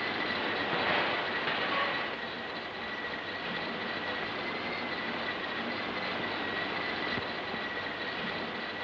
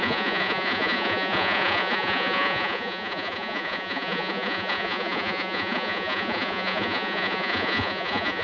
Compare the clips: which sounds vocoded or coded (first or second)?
second